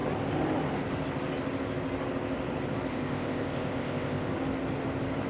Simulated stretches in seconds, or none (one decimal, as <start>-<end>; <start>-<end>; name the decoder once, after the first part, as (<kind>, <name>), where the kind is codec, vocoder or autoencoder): 2.9-4.3 (codec, ZipCodec)